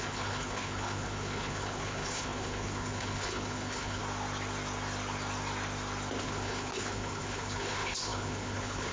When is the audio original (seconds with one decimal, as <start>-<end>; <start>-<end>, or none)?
4.0-6.2